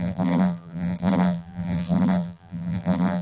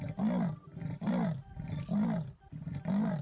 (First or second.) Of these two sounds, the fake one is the first